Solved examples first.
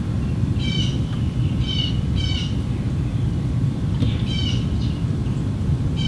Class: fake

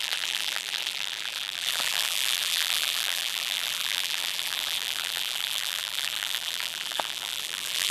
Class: fake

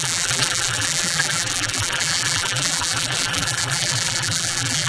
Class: fake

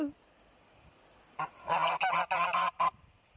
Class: real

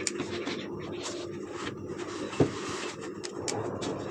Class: real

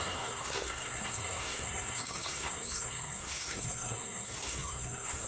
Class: fake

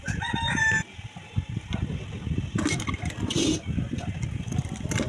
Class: real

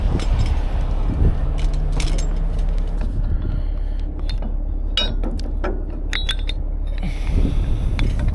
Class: real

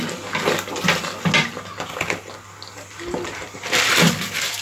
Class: real